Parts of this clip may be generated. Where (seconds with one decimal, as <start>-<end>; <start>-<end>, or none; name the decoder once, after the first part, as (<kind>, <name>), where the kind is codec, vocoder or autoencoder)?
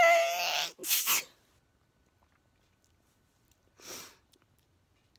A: none